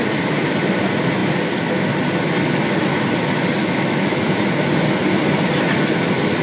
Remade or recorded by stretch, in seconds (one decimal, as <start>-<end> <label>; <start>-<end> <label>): 0.0-3.6 recorded; 3.6-4.4 remade; 4.4-6.4 recorded